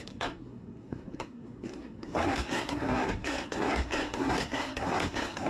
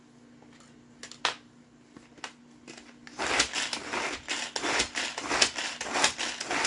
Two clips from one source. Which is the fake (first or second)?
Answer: first